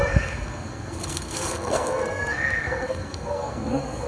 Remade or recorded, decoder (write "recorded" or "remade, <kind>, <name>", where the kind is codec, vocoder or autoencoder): remade, codec, SNAC